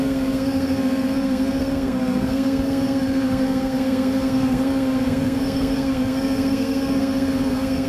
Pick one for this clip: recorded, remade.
remade